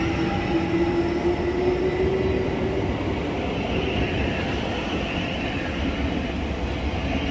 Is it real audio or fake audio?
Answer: real